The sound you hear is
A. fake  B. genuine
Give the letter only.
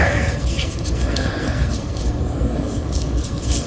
A